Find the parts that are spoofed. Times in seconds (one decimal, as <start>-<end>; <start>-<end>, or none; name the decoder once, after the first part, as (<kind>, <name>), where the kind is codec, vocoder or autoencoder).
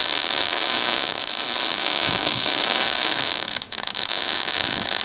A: 0.0-1.2 (codec, DAC); 1.7-5.0